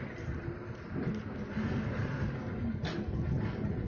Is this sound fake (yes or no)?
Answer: no